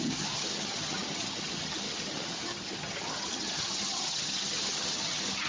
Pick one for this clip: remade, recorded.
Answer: remade